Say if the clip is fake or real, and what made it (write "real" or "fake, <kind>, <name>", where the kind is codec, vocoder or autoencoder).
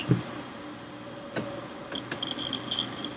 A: real